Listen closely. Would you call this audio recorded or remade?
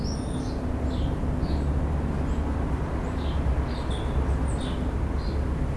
recorded